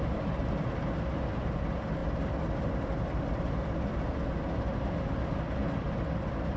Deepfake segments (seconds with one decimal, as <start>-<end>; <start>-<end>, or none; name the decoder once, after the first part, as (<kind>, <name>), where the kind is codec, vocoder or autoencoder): none